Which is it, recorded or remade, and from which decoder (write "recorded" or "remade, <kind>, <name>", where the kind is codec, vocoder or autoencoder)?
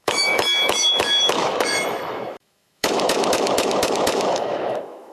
remade, autoencoder, DAC-VAE